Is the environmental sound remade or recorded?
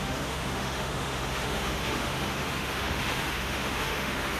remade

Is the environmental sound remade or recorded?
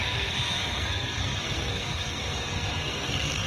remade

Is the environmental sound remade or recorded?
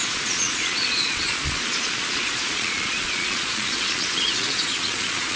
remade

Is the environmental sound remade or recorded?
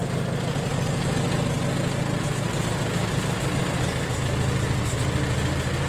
recorded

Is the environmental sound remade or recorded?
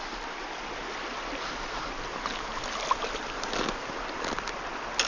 recorded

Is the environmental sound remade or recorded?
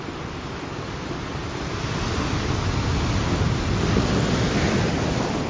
recorded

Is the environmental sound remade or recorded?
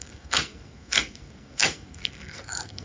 remade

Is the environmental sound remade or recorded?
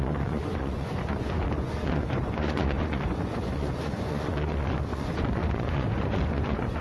remade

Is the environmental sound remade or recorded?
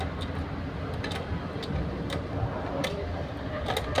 recorded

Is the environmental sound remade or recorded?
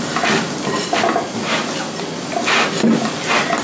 recorded